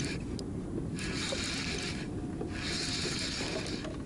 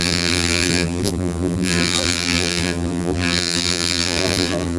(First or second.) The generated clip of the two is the second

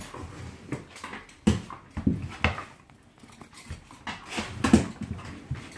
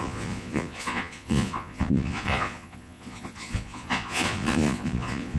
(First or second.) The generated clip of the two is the second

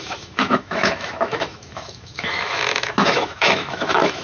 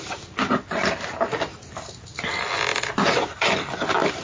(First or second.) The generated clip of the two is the first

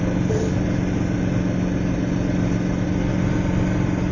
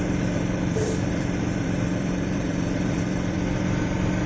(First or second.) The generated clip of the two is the second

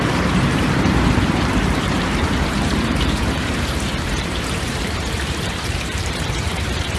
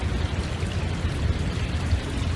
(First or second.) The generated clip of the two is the first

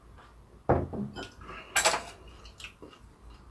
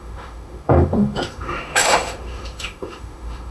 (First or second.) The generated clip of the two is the second